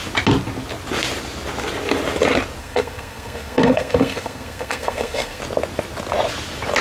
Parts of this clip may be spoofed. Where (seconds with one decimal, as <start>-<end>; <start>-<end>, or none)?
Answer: 2.6-5.4